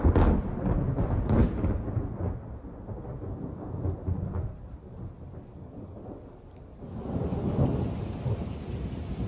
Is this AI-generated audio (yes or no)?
no